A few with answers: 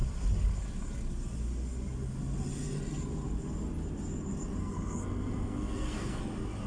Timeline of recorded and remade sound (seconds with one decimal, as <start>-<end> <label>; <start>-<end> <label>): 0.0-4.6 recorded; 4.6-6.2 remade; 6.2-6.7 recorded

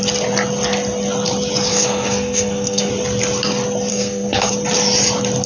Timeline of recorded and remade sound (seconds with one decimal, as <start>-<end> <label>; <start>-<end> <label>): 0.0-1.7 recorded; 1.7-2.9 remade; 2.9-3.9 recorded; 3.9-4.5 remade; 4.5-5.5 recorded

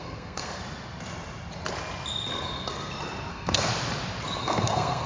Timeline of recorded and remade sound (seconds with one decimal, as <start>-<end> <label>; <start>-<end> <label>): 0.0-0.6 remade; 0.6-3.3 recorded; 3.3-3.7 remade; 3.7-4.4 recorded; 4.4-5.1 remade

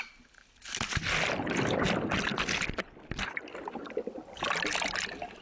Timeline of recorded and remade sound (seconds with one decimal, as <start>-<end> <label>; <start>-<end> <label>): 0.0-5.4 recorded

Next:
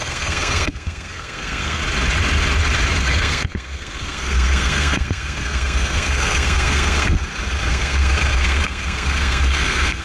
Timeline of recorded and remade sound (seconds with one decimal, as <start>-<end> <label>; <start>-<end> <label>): 0.0-1.8 remade; 1.8-3.0 recorded; 3.0-7.2 remade; 7.2-7.7 recorded; 7.7-10.0 remade

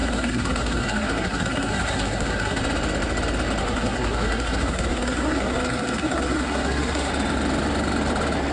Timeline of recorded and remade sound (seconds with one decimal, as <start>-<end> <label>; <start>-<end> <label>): 0.0-2.6 remade; 2.6-3.6 recorded; 3.6-7.1 remade; 7.1-8.5 recorded